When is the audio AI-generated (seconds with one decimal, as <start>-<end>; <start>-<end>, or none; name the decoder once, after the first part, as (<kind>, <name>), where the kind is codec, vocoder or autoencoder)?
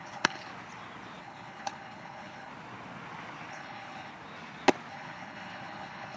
0.0-0.5 (codec, HILCodec); 1.2-2.5; 3.5-4.1; 4.9-6.2